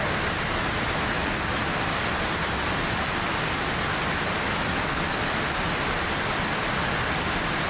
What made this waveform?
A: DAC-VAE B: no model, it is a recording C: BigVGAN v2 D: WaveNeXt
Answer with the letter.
B